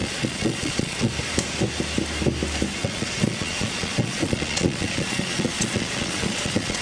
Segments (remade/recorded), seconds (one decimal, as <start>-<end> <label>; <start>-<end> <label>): 0.0-1.1 remade; 1.1-2.8 recorded; 2.8-6.8 remade